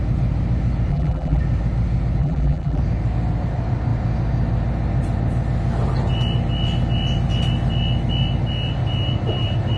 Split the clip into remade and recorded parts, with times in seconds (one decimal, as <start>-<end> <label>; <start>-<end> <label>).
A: 0.0-0.9 recorded; 0.9-1.4 remade; 1.4-2.2 recorded; 2.2-2.8 remade; 2.8-9.8 recorded